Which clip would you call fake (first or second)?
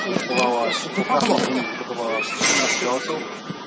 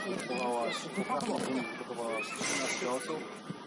first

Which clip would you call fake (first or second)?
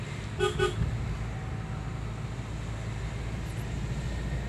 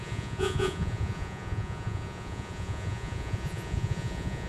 second